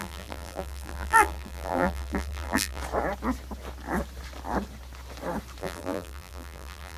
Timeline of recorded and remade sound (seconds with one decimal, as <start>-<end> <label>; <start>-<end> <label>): 0.0-2.8 remade; 2.8-5.6 recorded; 5.6-7.0 remade